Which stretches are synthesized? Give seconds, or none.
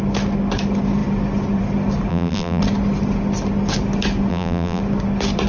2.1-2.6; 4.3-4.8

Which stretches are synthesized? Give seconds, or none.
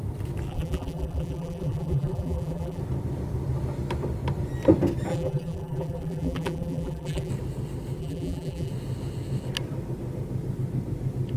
0.5-2.8; 5.1-7.3; 8.0-8.7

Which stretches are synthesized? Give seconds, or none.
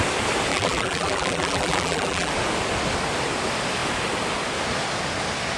0.5-2.3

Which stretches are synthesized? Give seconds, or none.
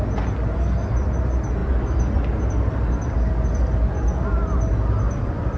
none